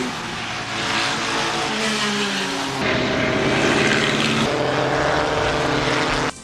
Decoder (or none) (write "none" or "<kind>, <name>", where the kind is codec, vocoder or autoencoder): none